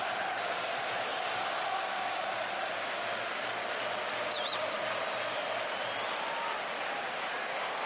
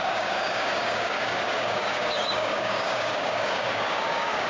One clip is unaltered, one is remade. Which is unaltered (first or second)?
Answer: first